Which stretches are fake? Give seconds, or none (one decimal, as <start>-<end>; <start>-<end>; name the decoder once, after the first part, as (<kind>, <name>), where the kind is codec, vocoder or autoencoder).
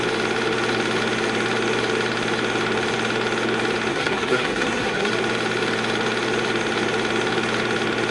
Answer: 3.9-5.1 (codec, SNAC)